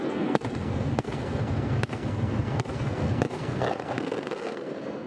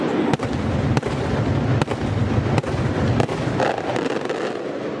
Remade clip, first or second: first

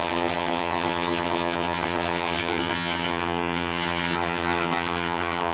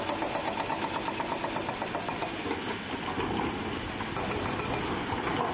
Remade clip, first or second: first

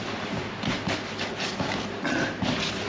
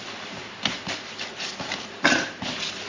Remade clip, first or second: second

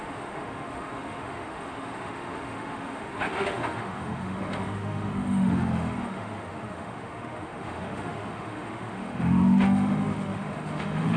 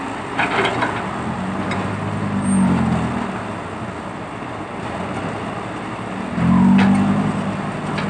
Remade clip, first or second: first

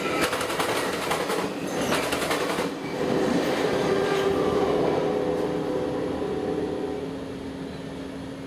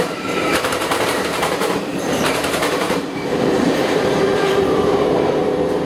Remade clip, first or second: second